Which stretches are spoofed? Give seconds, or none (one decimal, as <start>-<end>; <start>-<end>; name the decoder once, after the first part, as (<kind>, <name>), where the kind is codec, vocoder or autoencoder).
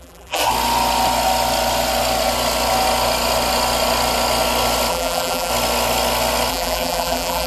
0.0-0.4 (vocoder, BigVGAN v2); 4.9-5.5; 6.5-7.5